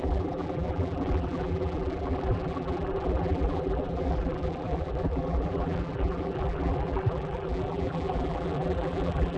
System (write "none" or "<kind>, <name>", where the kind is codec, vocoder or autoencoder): vocoder, BigVGAN v2